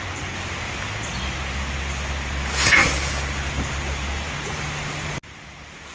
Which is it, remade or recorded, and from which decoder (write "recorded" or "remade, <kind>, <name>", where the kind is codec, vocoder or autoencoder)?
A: recorded